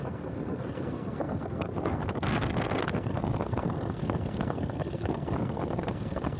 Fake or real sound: fake